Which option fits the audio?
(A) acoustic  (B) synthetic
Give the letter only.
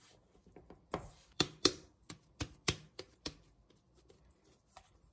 B